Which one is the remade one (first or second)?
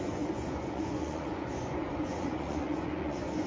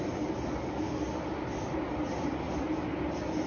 first